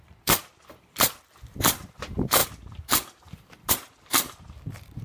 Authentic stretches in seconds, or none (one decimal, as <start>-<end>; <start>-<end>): none